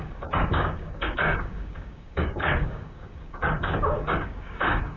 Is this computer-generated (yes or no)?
yes